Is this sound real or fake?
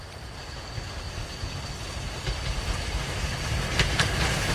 real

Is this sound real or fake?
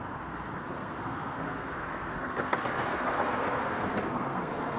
fake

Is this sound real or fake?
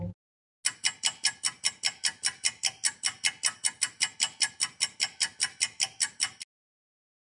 real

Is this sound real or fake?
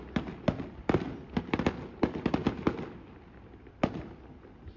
real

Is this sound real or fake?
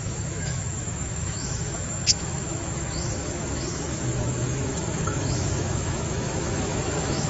fake